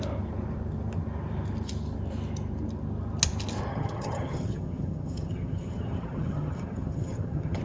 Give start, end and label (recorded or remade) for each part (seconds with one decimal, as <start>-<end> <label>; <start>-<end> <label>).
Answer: 0.0-3.7 recorded; 3.7-7.6 remade